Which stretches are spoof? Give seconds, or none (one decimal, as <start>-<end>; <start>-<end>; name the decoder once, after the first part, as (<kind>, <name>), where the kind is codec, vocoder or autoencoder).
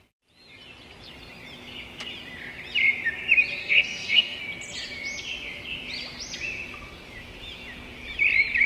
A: 3.6-4.4 (codec, SNAC)